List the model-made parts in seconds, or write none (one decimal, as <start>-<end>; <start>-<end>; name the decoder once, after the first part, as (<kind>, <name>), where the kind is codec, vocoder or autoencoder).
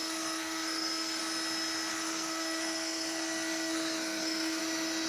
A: 0.0-1.2 (codec, SNAC); 1.9-4.6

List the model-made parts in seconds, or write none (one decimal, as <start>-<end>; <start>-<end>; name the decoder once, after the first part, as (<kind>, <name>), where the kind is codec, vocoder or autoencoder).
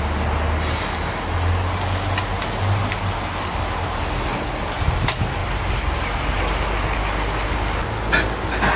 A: 5.4-6.0 (vocoder, BigVGAN v2)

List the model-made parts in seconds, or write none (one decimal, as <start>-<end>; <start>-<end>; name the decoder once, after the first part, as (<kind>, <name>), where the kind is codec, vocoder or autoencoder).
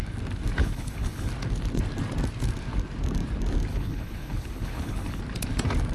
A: 0.6-1.3 (codec, HILCodec); 3.7-5.2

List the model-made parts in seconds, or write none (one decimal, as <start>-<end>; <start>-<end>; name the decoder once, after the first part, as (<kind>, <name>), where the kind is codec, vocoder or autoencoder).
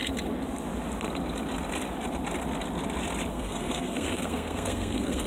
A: 3.3-5.3 (codec, SNAC)